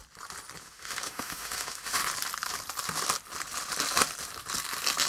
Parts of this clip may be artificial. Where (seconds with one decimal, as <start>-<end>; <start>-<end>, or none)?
0.6-2.0